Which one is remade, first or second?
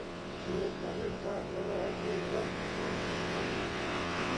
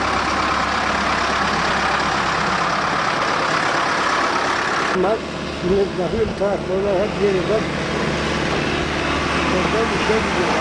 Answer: first